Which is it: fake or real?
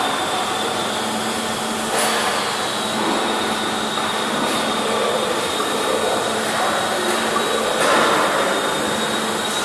real